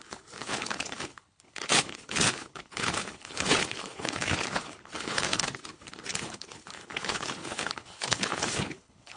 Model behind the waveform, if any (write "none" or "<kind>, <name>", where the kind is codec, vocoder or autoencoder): codec, HILCodec